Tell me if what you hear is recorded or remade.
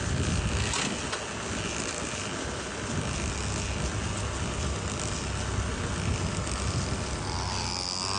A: recorded